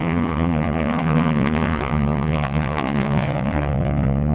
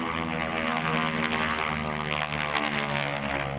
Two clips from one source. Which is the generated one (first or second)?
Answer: first